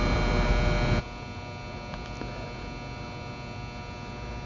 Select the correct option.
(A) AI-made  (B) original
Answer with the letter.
B